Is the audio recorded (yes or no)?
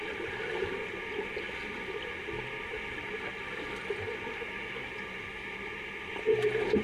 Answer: yes